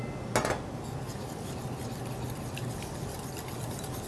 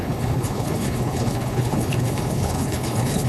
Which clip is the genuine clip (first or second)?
first